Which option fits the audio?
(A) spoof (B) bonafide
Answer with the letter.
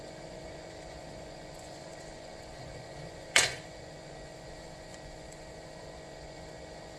A